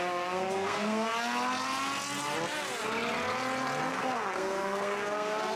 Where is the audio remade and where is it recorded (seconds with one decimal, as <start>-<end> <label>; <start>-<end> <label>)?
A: 0.0-1.1 remade; 1.1-3.9 recorded; 3.9-5.6 remade